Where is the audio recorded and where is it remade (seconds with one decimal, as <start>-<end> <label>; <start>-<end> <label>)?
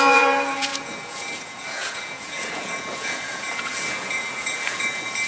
0.0-5.3 remade